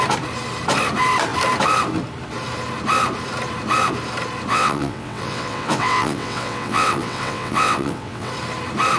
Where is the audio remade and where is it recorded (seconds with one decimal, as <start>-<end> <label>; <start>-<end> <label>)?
0.0-4.5 recorded; 4.5-8.3 remade; 8.3-9.0 recorded